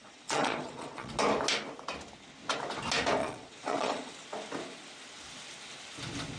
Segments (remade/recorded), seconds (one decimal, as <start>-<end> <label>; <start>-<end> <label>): 0.0-1.1 remade; 1.1-3.2 recorded; 3.2-4.1 remade; 4.1-6.4 recorded